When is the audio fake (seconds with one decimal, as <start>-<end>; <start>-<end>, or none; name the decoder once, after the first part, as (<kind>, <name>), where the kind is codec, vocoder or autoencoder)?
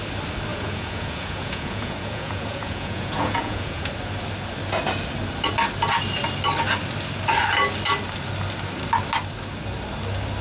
0.5-3.9 (vocoder, Vocos)